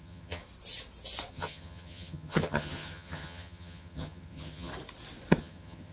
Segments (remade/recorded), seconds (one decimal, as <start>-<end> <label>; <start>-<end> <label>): 0.0-0.4 remade; 0.4-1.3 recorded; 1.3-4.7 remade; 4.7-5.4 recorded; 5.4-5.9 remade